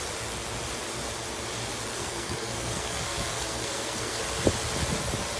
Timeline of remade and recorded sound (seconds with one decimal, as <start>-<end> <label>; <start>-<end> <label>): 0.0-1.9 recorded; 1.9-4.2 remade; 4.2-5.4 recorded